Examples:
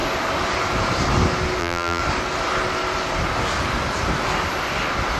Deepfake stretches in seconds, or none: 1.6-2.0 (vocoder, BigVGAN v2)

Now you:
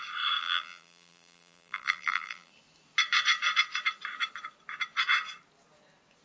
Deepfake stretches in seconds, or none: 0.4-2.5 (vocoder, BigVGAN v2)

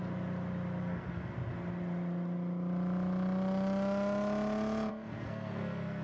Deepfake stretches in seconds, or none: 0.8-1.3 (codec, SNAC); 4.9-6.0

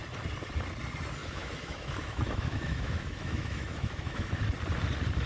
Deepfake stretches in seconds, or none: 1.2-4.4 (autoencoder, DAC-VAE)

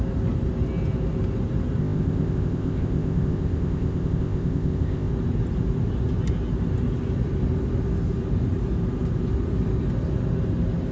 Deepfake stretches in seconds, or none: 1.8-5.1 (codec, ZipCodec)

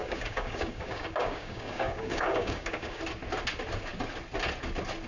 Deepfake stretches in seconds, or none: 0.0-3.0 (codec, DAC)